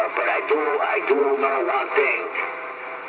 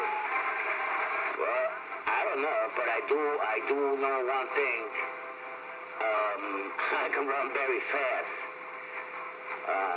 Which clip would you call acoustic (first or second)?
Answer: second